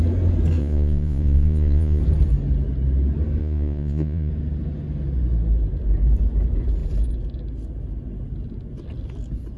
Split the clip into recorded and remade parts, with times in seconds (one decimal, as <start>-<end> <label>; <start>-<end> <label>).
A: 0.0-0.6 recorded; 0.6-2.0 remade; 2.0-3.4 recorded; 3.4-4.3 remade; 4.3-9.6 recorded